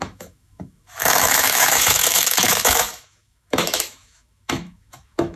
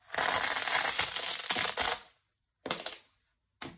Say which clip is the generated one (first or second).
first